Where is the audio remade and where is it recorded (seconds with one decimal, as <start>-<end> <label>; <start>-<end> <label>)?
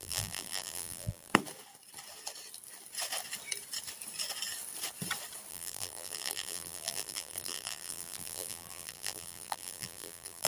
0.0-1.3 remade; 1.3-5.5 recorded; 5.5-10.5 remade